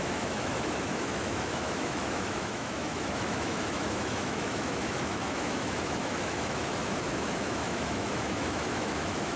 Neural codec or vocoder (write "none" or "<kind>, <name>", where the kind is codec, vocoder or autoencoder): autoencoder, DAC-VAE